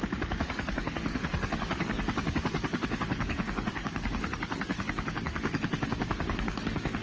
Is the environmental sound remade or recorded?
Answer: remade